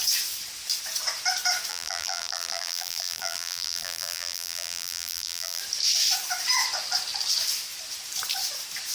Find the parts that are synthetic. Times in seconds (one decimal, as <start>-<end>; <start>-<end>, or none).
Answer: 1.7-5.6